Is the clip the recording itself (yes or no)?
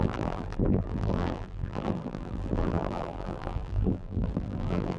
no